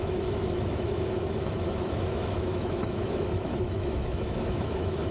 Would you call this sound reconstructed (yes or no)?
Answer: yes